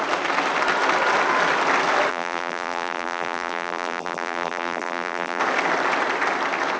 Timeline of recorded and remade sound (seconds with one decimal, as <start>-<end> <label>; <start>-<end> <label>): 0.0-2.1 recorded; 2.1-5.4 remade; 5.4-6.8 recorded